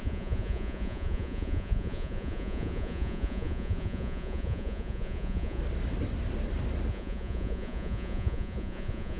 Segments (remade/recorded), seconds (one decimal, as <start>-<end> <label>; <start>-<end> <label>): 0.0-5.6 remade; 5.6-6.9 recorded; 6.9-9.2 remade